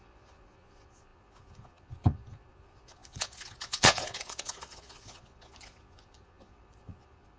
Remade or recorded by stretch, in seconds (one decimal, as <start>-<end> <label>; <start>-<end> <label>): 0.0-7.4 remade